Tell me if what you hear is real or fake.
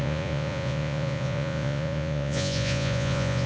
fake